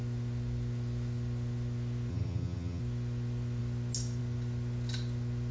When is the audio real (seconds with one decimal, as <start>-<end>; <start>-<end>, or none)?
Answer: 0.0-2.1; 2.8-5.5